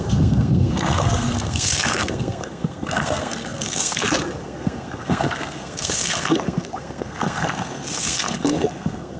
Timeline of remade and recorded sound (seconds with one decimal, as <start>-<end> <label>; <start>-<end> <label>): 0.0-9.2 remade